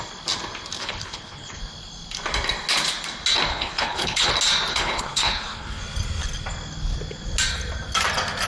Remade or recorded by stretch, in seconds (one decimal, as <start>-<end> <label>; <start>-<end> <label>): 0.0-0.8 recorded; 0.8-1.6 remade; 1.6-3.5 recorded; 3.5-4.3 remade; 4.3-4.7 recorded; 4.7-5.8 remade; 5.8-8.5 recorded